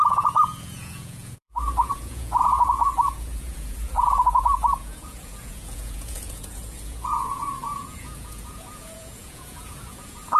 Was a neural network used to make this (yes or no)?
yes